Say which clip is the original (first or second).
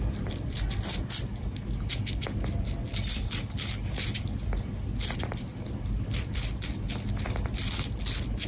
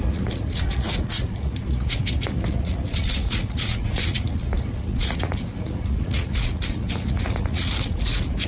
first